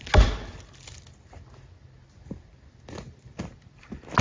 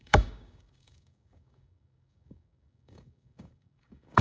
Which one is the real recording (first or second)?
first